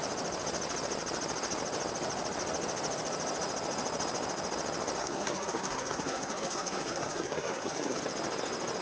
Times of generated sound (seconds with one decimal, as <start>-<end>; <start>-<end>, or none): 5.0-8.0